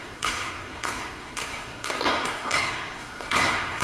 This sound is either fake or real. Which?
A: fake